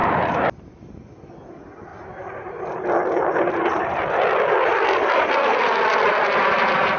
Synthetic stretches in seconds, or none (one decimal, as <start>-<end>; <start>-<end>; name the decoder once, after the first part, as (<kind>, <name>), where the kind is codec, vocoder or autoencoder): 1.9-6.1 (vocoder, BigVGAN v2)